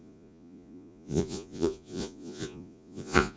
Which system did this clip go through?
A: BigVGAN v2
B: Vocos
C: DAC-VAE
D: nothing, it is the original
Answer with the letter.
B